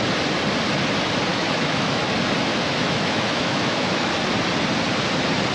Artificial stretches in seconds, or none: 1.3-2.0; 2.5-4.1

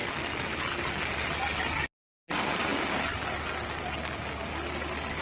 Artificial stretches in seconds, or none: none

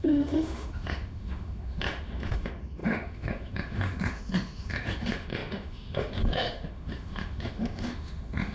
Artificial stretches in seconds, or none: 0.0-8.5

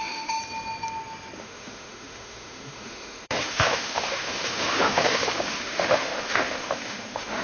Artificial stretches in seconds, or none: 0.0-0.4; 1.4-7.4